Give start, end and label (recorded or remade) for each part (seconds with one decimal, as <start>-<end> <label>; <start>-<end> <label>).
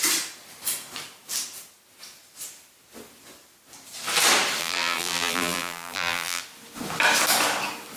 0.0-4.6 recorded; 4.6-6.4 remade; 6.4-8.0 recorded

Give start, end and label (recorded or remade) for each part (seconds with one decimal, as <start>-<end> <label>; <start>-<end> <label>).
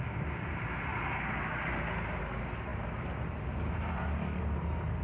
0.0-5.0 recorded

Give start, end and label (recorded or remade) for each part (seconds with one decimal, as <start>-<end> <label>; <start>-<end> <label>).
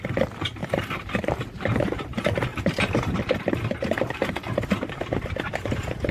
0.0-0.6 recorded; 0.6-1.2 remade; 1.2-2.5 recorded; 2.5-3.2 remade; 3.2-6.1 recorded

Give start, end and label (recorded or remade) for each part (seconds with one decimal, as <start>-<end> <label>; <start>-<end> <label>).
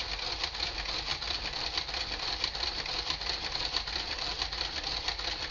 0.0-1.1 recorded; 1.1-4.4 remade; 4.4-5.5 recorded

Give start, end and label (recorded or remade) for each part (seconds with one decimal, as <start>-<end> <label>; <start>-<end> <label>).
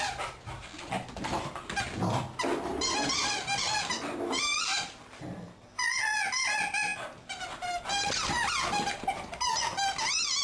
0.0-2.7 recorded; 2.7-3.3 remade; 3.3-4.5 recorded; 4.5-5.2 remade; 5.2-10.4 recorded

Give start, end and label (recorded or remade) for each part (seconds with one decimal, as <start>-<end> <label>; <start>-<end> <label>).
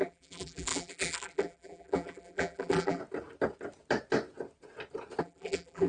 0.0-3.0 remade; 3.0-5.2 recorded; 5.2-5.9 remade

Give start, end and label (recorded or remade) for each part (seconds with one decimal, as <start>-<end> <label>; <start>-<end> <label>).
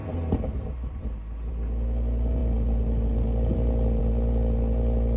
0.0-1.5 remade; 1.5-5.2 recorded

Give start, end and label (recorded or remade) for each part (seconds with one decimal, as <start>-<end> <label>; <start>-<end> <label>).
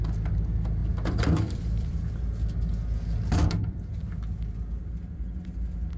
0.0-0.8 recorded; 0.8-2.2 remade; 2.2-6.0 recorded